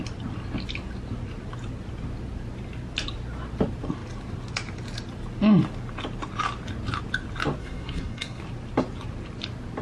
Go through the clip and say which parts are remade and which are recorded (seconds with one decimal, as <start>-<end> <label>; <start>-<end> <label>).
0.0-7.6 recorded; 7.6-8.4 remade; 8.4-9.8 recorded